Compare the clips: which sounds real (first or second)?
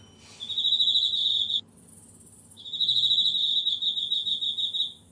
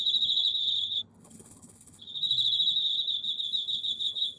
first